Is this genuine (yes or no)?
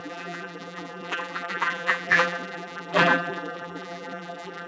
no